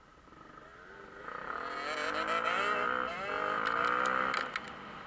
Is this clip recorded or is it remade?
recorded